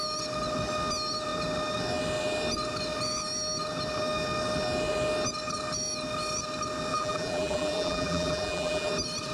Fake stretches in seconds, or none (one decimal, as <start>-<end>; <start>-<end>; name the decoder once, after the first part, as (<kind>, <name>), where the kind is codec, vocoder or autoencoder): 6.9-8.9 (vocoder, BigVGAN v2)